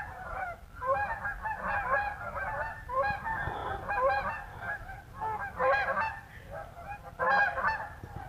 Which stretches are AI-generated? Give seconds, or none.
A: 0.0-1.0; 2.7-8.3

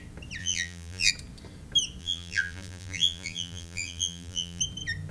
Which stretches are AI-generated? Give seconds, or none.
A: 0.4-1.1; 2.0-4.6

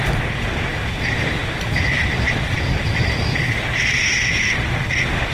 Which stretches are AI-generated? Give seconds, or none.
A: none

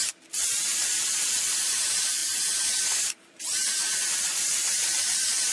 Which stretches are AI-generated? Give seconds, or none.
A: 0.0-5.5

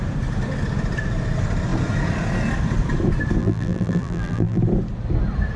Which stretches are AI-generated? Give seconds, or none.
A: 3.4-4.6